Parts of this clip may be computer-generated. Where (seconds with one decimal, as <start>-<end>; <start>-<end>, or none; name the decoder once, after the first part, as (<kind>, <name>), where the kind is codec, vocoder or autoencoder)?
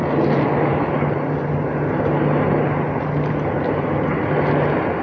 none